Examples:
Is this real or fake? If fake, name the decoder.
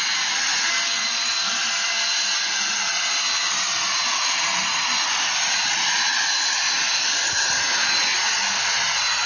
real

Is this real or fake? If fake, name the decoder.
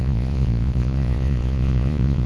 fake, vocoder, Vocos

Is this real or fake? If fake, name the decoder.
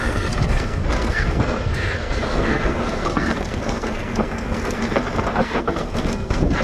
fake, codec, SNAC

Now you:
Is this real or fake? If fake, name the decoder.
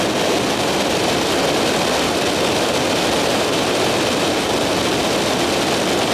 real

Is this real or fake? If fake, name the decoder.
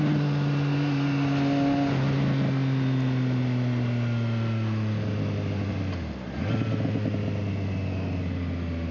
real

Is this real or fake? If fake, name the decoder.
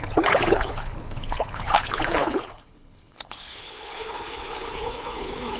fake, codec, HILCodec